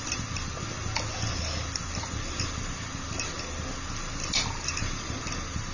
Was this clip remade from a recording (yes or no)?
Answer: no